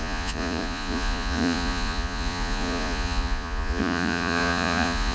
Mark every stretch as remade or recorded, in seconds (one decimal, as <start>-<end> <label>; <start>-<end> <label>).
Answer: 0.0-5.1 remade